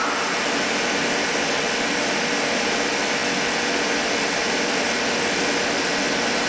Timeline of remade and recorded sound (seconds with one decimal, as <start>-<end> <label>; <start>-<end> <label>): 0.0-6.5 recorded